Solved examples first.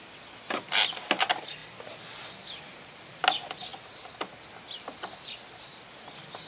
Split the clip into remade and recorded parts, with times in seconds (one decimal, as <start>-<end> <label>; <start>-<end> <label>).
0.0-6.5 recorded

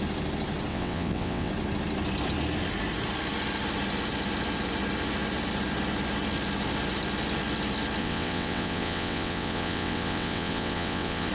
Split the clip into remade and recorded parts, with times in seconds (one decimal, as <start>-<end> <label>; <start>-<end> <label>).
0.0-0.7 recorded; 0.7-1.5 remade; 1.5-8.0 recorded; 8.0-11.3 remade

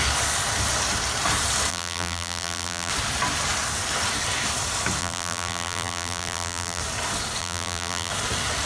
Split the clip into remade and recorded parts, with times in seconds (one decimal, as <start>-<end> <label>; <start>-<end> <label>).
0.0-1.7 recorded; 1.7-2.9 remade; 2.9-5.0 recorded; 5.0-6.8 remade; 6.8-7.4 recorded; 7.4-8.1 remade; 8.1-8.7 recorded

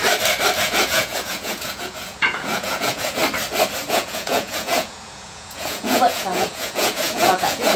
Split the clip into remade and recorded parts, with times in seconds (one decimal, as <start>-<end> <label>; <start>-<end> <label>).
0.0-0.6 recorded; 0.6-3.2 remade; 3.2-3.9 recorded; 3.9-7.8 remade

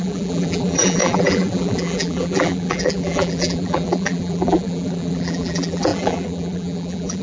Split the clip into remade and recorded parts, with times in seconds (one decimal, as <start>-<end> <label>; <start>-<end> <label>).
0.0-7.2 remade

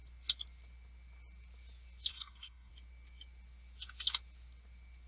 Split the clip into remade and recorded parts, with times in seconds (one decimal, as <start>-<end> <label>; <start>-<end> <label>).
0.0-2.1 recorded; 2.1-2.7 remade; 2.7-5.1 recorded